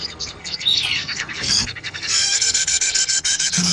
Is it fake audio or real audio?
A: fake